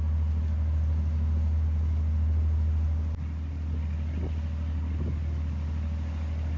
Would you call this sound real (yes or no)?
yes